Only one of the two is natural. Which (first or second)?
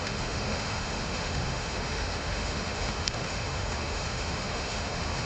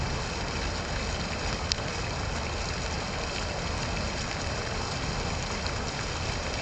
second